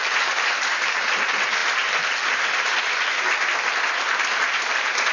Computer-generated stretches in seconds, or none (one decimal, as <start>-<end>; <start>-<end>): none